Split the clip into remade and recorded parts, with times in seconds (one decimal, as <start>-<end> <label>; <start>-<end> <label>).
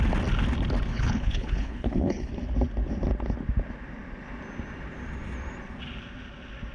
0.0-0.9 recorded; 0.9-2.3 remade; 2.3-6.7 recorded